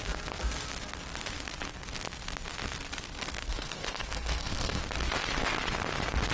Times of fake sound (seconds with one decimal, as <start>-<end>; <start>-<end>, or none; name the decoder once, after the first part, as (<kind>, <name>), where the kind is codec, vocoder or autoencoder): 3.5-4.8 (codec, SNAC)